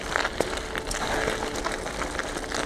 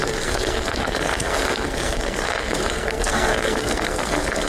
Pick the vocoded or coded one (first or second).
second